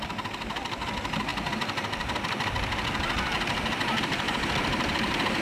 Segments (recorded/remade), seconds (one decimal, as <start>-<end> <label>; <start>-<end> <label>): 0.0-5.4 recorded